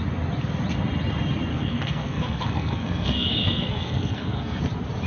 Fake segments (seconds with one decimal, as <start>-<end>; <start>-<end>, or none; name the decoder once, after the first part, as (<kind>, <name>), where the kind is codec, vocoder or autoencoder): 1.5-4.6 (codec, SNAC)